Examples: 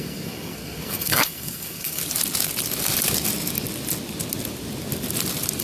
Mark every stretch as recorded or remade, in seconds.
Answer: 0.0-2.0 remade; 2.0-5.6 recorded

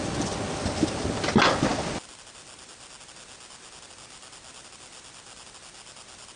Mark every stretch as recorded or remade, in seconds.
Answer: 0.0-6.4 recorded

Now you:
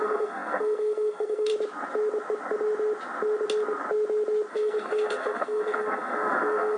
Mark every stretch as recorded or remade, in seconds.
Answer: 0.0-1.5 remade; 1.5-4.5 recorded; 4.5-6.8 remade

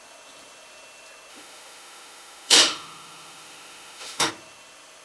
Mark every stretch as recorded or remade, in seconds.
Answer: 0.0-1.3 recorded; 1.3-4.3 remade; 4.3-5.0 recorded

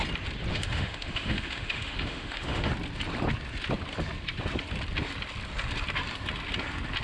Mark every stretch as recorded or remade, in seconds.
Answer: 0.0-0.5 recorded; 0.5-2.7 remade; 2.7-7.0 recorded

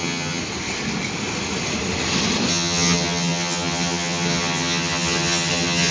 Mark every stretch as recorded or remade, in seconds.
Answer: 0.0-0.4 remade; 0.4-2.5 recorded; 2.5-5.9 remade

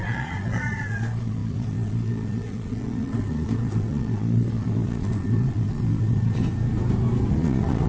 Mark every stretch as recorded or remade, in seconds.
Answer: 0.0-6.4 remade; 6.4-7.3 recorded; 7.3-7.9 remade

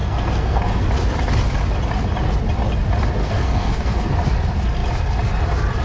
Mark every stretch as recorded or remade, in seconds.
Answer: 0.0-0.8 remade; 0.8-3.2 recorded; 3.2-4.1 remade; 4.1-5.8 recorded